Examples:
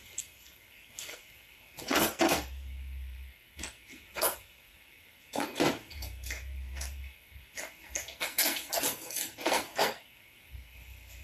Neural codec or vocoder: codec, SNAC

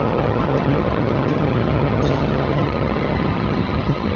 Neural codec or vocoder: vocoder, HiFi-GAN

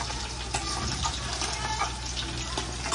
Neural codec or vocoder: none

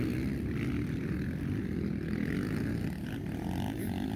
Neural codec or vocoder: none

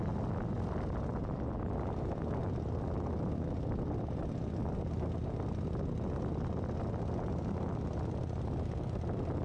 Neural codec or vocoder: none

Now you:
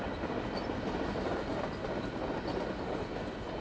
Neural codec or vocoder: none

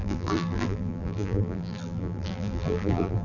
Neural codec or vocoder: vocoder, BigVGAN v2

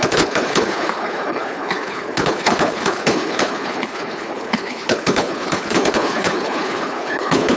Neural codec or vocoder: codec, HILCodec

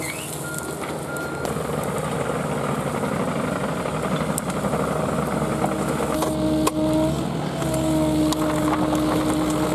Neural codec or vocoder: none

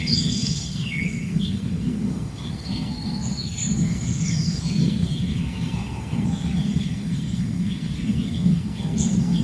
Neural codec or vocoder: codec, SNAC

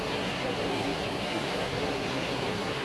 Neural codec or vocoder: codec, SNAC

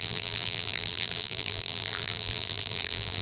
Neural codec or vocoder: vocoder, BigVGAN v2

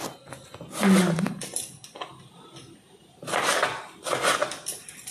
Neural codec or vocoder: none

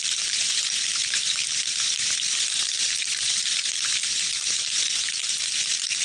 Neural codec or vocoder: vocoder, BigVGAN v2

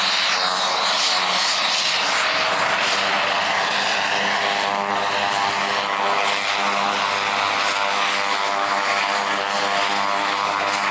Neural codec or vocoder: none